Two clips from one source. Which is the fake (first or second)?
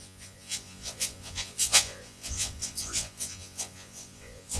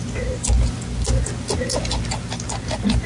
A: first